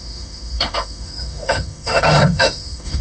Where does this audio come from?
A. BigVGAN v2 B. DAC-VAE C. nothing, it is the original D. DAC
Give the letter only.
B